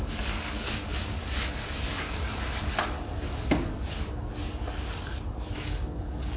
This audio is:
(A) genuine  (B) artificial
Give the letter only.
B